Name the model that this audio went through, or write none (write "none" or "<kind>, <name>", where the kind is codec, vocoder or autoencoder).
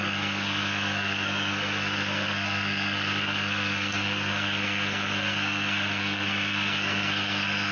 codec, SNAC